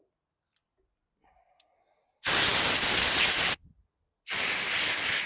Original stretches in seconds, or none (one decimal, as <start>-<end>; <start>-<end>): 0.0-5.3